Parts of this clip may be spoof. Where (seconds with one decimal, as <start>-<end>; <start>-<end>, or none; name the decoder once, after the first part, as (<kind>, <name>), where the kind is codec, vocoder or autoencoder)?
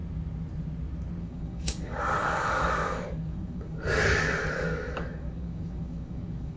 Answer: 1.2-6.6 (codec, DAC)